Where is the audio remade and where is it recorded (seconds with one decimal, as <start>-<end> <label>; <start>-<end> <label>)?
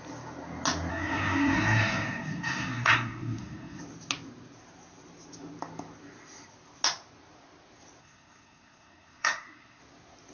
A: 0.0-0.9 recorded; 0.9-3.8 remade; 3.8-8.0 recorded; 8.0-9.8 remade; 9.8-10.3 recorded